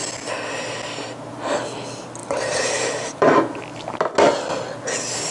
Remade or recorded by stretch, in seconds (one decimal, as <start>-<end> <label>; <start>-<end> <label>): 0.0-2.2 recorded; 2.2-3.6 remade; 3.6-5.3 recorded